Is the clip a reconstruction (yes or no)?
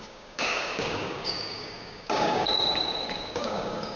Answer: yes